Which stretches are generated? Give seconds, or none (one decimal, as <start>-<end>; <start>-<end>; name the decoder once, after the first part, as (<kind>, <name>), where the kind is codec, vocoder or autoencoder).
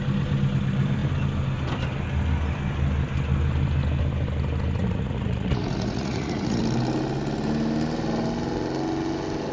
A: 4.8-6.6 (vocoder, Vocos)